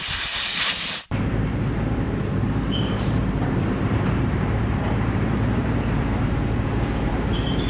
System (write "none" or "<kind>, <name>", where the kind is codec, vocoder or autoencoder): vocoder, BigVGAN v2